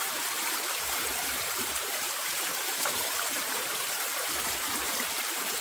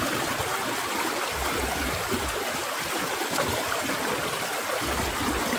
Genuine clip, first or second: second